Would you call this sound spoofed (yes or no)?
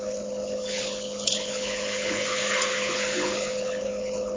yes